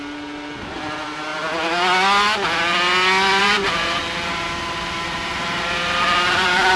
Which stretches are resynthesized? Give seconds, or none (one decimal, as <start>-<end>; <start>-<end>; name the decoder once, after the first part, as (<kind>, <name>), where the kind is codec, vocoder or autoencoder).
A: 0.0-1.3 (vocoder, BigVGAN v2); 3.4-4.0; 4.6-6.8